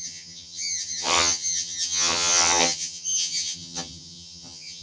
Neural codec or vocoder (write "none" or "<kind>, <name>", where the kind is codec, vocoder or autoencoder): vocoder, HiFi-GAN